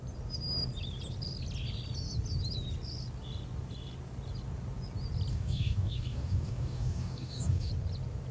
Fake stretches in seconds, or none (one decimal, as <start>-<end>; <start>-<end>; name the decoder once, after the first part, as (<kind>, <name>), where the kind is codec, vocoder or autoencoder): 5.3-7.7 (codec, DAC)